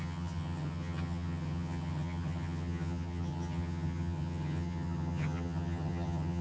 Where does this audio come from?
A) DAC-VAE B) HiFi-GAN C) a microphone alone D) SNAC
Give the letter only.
B